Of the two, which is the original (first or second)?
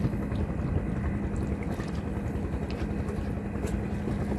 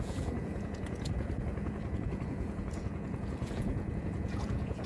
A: first